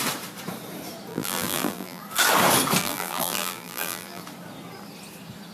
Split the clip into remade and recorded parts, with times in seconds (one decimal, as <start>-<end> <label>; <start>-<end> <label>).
0.0-1.1 recorded; 1.1-2.0 remade; 2.0-2.8 recorded; 2.8-4.2 remade; 4.2-5.5 recorded